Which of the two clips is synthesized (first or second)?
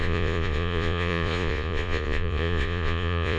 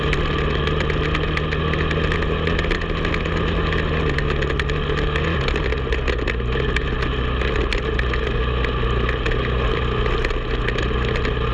first